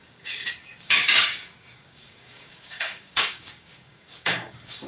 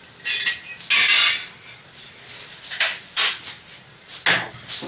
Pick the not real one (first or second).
first